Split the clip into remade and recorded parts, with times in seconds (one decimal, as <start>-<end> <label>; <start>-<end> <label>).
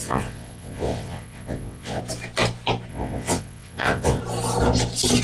0.0-2.0 remade; 2.0-2.9 recorded; 2.9-4.2 remade; 4.2-5.2 recorded